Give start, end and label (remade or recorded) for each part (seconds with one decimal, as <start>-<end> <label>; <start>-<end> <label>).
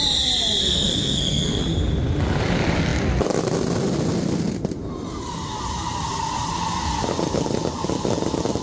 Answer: 0.0-0.6 recorded; 0.6-1.6 remade; 1.6-8.6 recorded